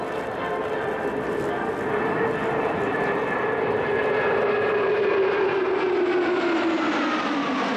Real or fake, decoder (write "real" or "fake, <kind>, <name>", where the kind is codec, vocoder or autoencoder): real